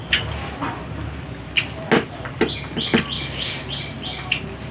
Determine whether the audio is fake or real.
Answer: real